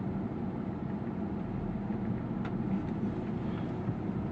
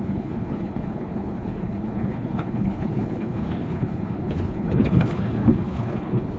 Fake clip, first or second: second